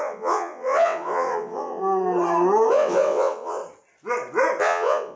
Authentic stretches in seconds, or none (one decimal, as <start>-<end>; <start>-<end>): 1.8-2.7; 3.6-4.6

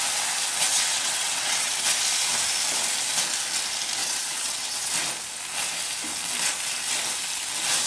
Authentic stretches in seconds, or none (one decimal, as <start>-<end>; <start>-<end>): 0.0-0.7; 1.7-4.0; 4.9-7.9

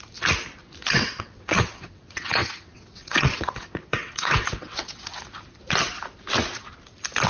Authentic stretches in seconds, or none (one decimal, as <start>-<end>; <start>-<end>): 0.0-0.8; 5.1-7.3

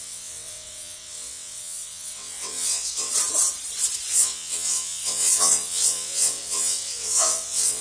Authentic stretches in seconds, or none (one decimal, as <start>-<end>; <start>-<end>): 3.1-4.1

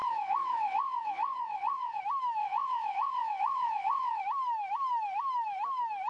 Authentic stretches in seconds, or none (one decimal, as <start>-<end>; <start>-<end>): 2.0-2.4; 4.2-6.1

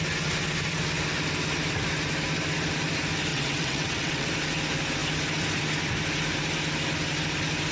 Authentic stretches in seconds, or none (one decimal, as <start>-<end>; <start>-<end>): 0.0-3.3; 4.3-7.7

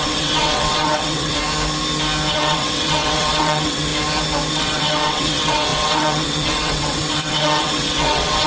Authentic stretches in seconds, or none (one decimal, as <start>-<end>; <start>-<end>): 1.4-2.3; 3.9-4.5

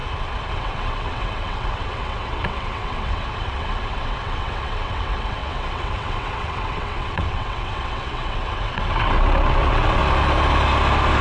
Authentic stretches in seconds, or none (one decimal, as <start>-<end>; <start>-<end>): 0.0-0.5; 10.0-11.2